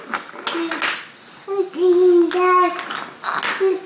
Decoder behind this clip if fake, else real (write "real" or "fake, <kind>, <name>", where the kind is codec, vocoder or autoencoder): real